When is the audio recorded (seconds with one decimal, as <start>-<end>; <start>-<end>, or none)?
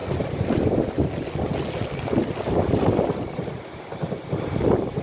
0.0-5.0